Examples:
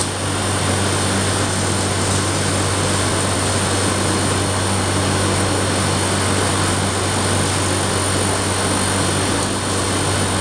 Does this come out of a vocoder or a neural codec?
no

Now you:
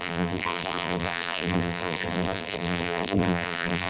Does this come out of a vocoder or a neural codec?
yes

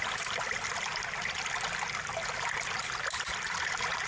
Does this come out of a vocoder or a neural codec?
no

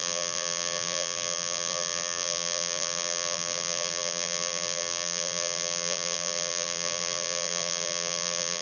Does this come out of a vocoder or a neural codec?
yes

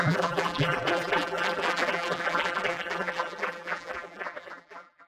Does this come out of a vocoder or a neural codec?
yes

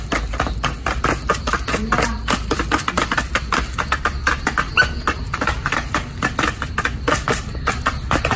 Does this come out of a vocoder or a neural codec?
no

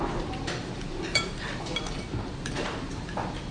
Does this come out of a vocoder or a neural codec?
yes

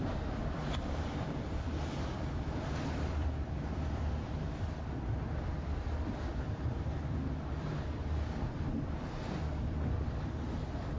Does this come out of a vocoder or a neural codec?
yes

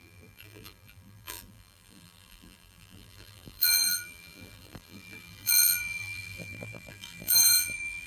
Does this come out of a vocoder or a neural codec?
yes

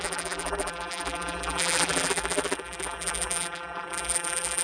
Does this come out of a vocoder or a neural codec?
yes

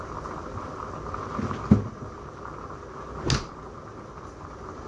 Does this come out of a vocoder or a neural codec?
no